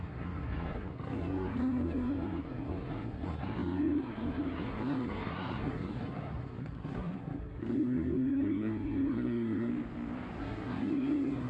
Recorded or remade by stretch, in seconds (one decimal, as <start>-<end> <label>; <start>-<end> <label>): 0.0-9.7 remade; 9.7-10.4 recorded; 10.4-11.5 remade